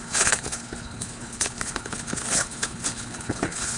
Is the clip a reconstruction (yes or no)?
yes